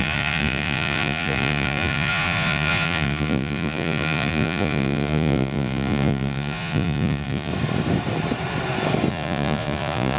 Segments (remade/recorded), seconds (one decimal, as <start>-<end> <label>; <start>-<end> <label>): 0.0-7.5 remade; 7.5-9.1 recorded; 9.1-10.2 remade